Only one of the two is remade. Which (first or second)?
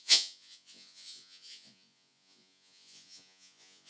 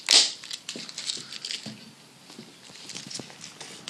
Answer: first